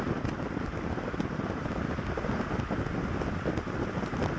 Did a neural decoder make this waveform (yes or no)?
no